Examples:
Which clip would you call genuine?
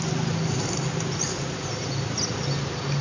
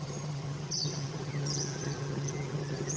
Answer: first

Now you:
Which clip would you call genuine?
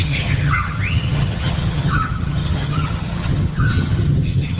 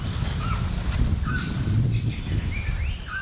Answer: second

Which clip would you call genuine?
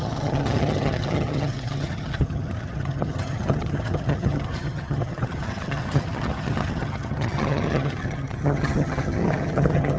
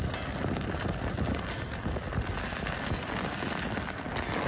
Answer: second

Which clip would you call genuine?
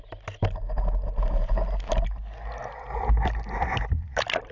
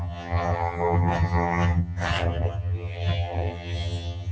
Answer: first